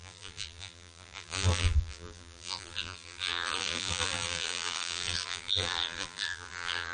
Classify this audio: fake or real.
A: fake